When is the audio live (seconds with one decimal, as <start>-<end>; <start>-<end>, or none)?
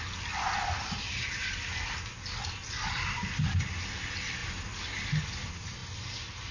0.0-6.5